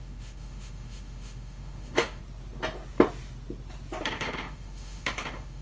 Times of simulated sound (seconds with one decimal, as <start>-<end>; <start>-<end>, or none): 0.0-2.2; 4.0-5.6